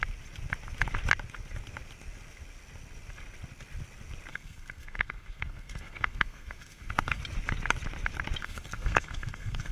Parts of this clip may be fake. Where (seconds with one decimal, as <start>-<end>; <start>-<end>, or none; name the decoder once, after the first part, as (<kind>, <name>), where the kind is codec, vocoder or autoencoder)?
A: 4.3-7.2 (codec, SNAC); 8.4-9.7